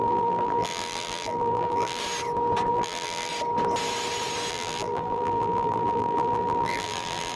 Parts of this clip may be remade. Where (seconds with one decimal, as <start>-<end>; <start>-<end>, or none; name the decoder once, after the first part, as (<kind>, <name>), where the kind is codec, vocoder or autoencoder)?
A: 0.0-2.0 (vocoder, BigVGAN v2); 2.7-3.3; 4.5-7.4